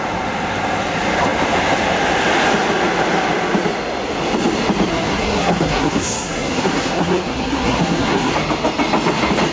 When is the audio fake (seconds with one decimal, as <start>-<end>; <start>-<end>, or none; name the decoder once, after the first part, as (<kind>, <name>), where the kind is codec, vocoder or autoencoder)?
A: 4.9-8.3 (codec, SNAC)